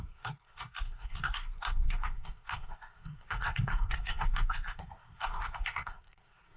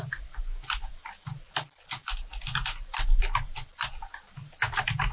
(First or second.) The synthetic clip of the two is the first